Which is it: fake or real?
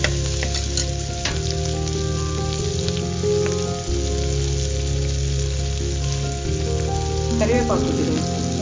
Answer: real